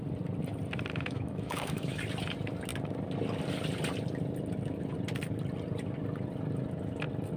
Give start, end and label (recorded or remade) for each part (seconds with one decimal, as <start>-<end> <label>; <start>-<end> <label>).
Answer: 0.0-0.9 recorded; 0.9-2.0 remade; 2.0-7.4 recorded